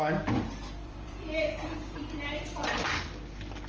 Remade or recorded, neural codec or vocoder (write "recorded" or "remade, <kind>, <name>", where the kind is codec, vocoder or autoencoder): remade, vocoder, BigVGAN v2